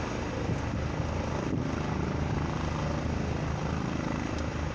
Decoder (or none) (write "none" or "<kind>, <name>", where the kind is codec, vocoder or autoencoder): none